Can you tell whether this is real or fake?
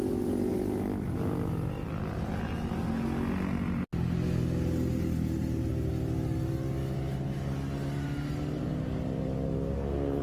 real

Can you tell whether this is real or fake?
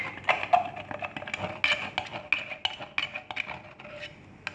real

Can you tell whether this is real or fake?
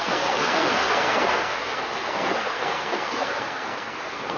fake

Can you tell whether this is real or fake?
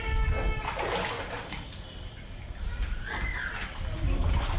real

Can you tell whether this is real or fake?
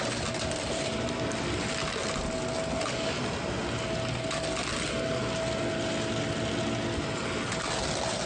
real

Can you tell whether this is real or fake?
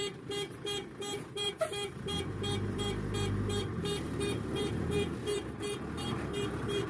fake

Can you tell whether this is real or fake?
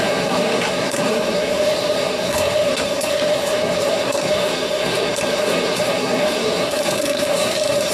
fake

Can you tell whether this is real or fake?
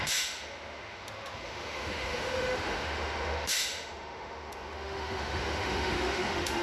fake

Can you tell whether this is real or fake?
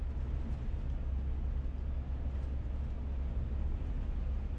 real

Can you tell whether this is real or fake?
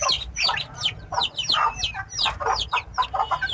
fake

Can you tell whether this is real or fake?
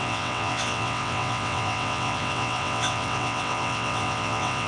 fake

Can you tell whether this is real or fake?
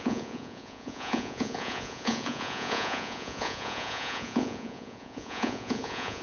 fake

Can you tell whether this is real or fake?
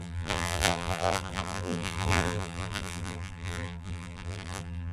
fake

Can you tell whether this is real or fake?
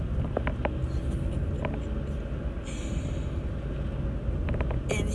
real